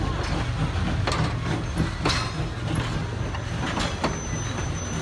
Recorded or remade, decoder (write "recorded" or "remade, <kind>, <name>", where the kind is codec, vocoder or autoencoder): recorded